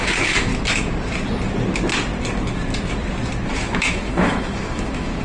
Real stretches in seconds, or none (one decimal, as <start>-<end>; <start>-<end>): 0.5-3.6